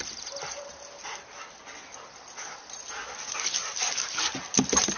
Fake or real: real